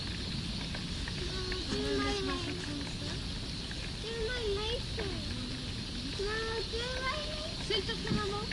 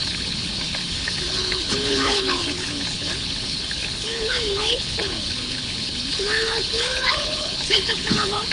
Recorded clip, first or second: first